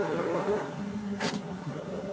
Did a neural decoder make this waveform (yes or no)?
yes